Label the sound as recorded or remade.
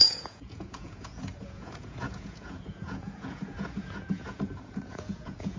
remade